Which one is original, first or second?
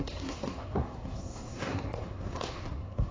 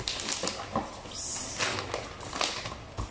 second